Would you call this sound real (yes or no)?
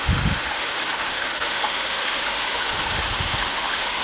no